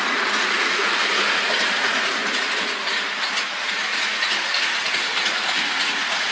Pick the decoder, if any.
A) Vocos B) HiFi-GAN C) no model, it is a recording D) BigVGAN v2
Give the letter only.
A